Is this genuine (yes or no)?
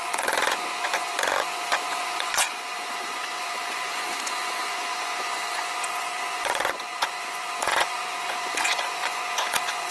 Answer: no